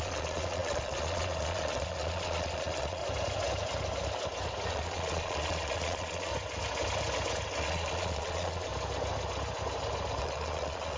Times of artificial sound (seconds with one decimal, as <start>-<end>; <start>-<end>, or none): 0.0-3.0; 4.7-6.3; 7.6-8.7; 10.2-11.0